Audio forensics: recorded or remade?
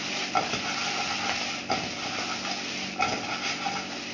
recorded